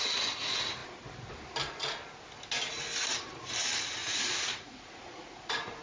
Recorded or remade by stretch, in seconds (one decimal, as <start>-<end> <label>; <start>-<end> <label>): 0.0-4.0 recorded; 4.0-5.8 remade